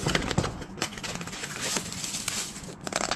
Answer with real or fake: fake